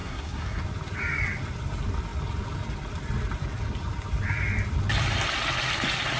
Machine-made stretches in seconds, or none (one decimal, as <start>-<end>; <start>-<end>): 0.0-0.6